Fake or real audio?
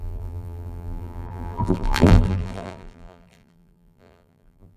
fake